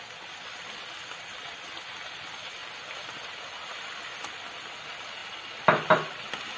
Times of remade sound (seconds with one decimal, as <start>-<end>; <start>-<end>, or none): none